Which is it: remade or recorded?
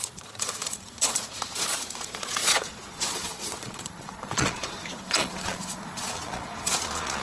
remade